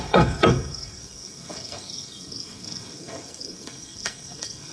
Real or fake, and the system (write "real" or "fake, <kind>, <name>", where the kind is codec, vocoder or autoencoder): fake, codec, SNAC